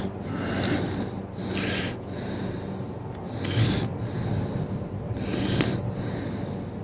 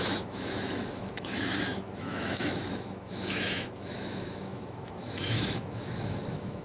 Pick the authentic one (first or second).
first